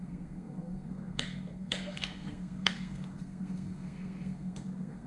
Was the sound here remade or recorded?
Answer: remade